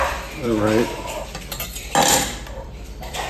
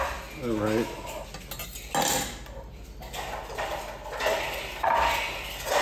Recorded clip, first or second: second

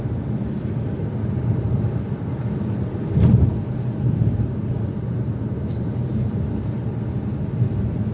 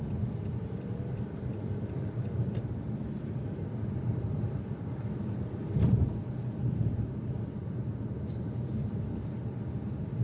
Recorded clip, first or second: first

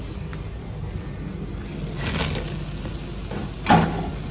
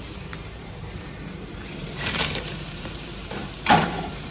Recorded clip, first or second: first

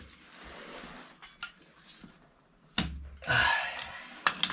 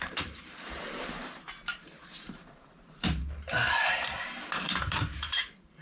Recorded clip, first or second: first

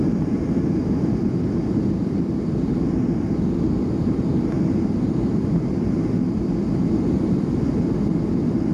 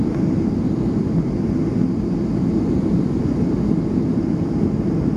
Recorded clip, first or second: second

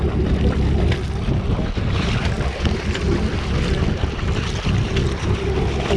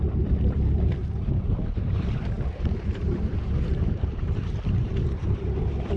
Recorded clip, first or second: first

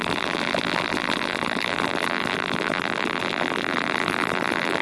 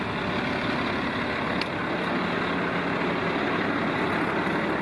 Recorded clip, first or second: second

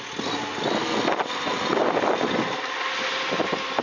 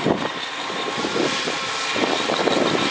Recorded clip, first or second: first